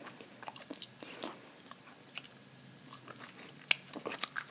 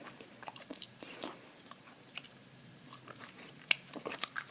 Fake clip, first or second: second